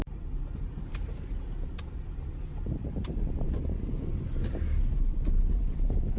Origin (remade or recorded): recorded